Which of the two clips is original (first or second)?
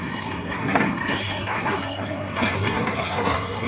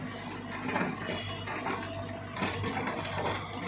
second